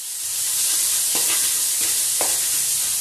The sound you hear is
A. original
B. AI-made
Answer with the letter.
A